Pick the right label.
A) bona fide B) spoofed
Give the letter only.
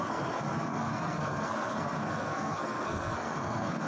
B